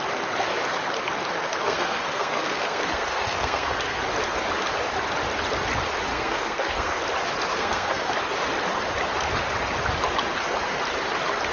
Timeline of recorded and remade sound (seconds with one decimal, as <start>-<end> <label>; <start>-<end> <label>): 0.0-1.4 recorded; 1.4-4.0 remade; 4.0-6.1 recorded; 6.1-7.0 remade; 7.0-7.5 recorded; 7.5-8.1 remade; 8.1-11.5 recorded